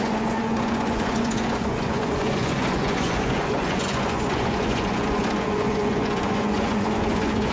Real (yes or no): no